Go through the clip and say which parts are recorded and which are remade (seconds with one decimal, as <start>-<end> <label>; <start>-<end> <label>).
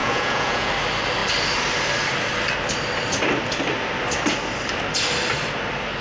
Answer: 0.0-0.7 remade; 0.7-6.0 recorded